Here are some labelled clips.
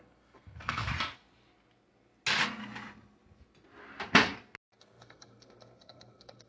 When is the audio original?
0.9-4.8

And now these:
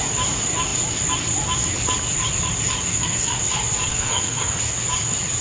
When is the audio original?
0.0-2.9; 3.4-3.9; 4.6-5.4

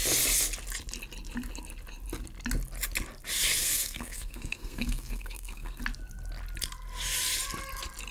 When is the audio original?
0.0-3.6; 5.8-8.1

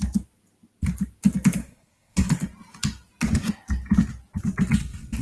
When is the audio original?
0.0-1.6; 2.3-5.2